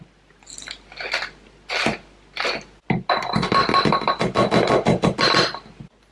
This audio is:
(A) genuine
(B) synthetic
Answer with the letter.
A